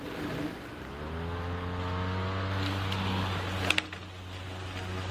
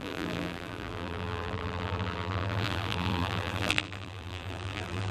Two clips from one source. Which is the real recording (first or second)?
first